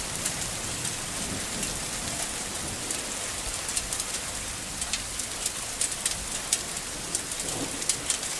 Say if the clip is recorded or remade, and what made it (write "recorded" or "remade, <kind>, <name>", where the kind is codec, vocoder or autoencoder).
recorded